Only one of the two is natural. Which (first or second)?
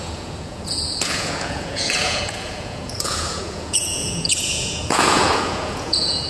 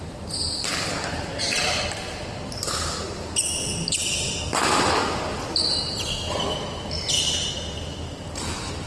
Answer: second